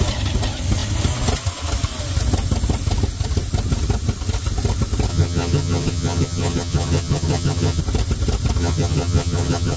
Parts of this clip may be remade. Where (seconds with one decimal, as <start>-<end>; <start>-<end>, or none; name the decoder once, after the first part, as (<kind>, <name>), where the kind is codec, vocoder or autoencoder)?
5.1-7.8 (vocoder, HiFi-GAN); 8.6-9.8